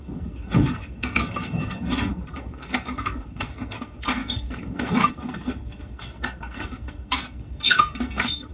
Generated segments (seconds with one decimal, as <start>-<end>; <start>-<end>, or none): 0.0-8.5